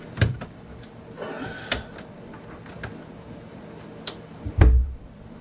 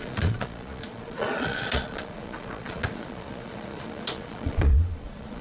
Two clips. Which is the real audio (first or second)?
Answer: first